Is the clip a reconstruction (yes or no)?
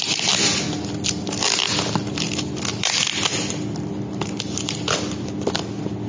no